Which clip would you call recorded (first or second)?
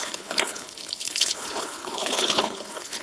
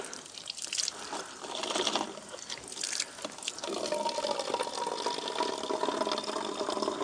second